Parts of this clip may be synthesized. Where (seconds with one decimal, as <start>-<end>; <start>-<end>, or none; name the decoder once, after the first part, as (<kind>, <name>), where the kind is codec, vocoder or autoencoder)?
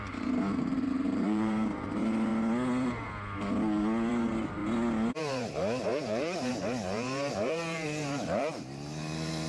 0.0-2.3 (vocoder, BigVGAN v2); 4.1-4.6; 5.1-9.5